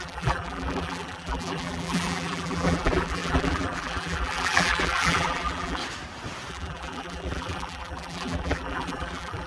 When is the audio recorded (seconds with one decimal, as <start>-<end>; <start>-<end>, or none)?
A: 5.8-6.5